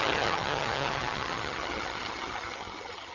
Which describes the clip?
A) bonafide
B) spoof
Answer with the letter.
B